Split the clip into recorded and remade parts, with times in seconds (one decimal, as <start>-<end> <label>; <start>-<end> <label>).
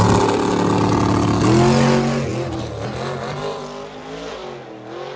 0.0-5.2 recorded